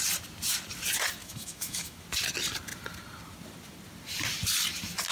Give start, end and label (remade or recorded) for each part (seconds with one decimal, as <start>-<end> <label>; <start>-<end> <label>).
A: 0.0-1.2 recorded; 1.2-2.0 remade; 2.0-5.1 recorded